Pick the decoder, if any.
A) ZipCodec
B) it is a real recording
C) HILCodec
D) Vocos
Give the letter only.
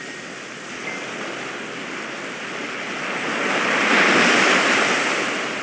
B